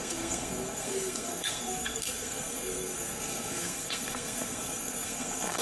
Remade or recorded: remade